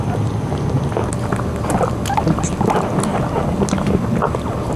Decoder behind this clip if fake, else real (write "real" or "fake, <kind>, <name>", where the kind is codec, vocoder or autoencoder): real